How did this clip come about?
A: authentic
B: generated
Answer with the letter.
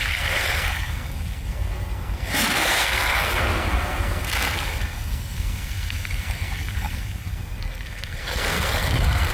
B